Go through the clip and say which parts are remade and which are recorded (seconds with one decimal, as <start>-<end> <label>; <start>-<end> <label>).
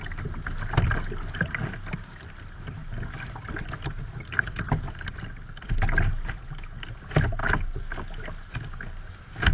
0.0-9.5 recorded